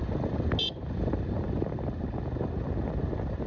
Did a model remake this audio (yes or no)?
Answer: no